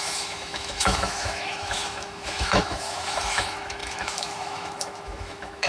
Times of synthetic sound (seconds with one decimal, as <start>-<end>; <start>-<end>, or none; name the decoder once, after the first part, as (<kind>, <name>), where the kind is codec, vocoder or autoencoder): 0.0-5.7 (autoencoder, DAC-VAE)